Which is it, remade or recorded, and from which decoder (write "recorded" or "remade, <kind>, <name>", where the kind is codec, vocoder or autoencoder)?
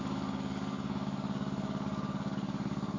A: remade, codec, DAC